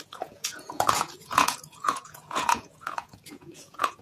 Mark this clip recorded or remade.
remade